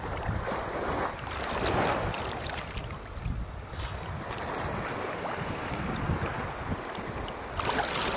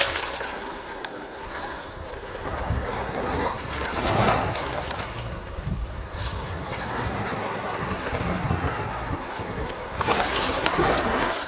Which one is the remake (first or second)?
second